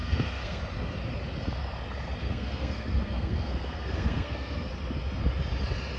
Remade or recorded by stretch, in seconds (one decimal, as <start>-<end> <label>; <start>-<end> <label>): 0.0-0.6 remade; 0.6-2.2 recorded; 2.2-4.7 remade; 4.7-6.0 recorded